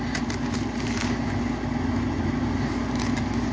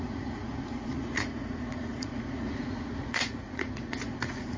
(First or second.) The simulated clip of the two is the second